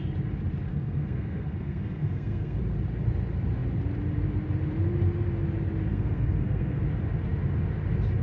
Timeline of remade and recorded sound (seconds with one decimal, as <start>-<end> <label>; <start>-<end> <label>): 0.0-0.7 recorded; 0.7-2.6 remade; 2.6-5.9 recorded; 5.9-6.8 remade; 6.8-8.2 recorded